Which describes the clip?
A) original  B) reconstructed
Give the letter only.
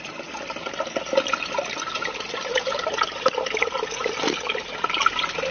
A